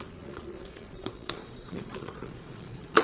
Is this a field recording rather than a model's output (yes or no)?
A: no